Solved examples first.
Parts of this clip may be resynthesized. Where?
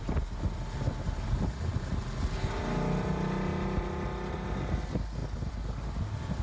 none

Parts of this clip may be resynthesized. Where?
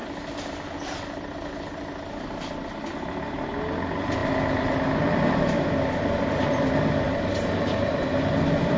none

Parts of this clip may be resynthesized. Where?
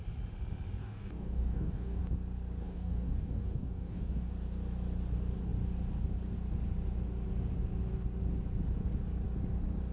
0.8-2.0 (codec, DAC); 2.6-4.3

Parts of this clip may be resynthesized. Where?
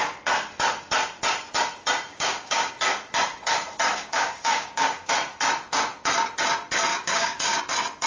2.1-2.7 (codec, DAC); 3.9-5.1; 6.9-7.6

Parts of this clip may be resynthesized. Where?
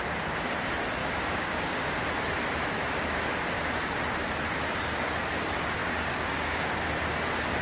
1.0-1.9 (codec, DAC); 5.8-6.7